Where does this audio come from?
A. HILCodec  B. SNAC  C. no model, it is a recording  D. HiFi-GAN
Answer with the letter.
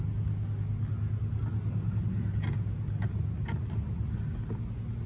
C